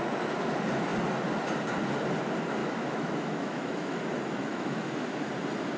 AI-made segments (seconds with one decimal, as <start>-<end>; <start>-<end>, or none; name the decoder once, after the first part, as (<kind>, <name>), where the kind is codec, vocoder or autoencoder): 2.6-4.0 (autoencoder, DAC-VAE); 4.5-5.3